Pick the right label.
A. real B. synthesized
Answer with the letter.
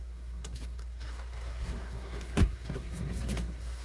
B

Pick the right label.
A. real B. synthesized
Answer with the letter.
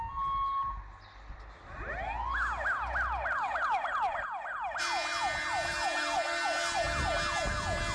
A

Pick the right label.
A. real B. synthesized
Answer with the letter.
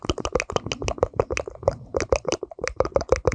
A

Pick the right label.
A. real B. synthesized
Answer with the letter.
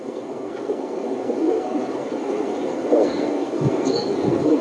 B